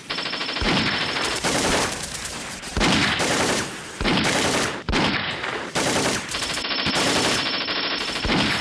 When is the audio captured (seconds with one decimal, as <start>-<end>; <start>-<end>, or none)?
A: none